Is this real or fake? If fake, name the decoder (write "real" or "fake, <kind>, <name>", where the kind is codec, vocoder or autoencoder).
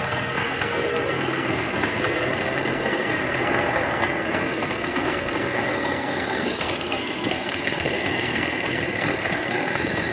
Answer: fake, codec, SNAC